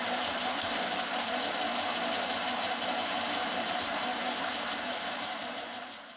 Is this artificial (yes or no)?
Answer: yes